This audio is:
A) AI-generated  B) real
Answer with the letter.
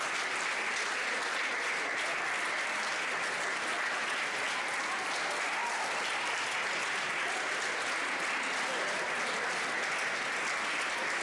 B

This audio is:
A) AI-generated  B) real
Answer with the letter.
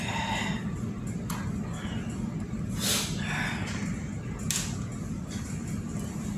B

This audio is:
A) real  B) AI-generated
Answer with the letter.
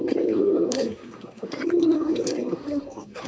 B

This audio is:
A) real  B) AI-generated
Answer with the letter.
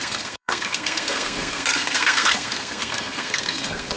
B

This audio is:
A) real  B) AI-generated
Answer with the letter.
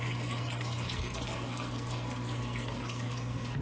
B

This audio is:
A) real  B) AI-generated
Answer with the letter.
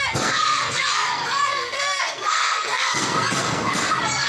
B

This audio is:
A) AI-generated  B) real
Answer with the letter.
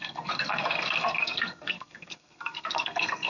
A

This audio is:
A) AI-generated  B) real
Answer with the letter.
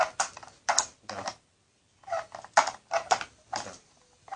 B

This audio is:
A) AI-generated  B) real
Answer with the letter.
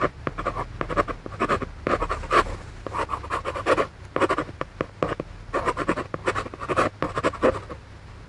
B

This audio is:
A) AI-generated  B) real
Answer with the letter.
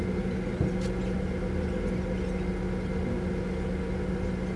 B